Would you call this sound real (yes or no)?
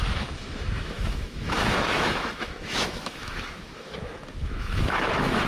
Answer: no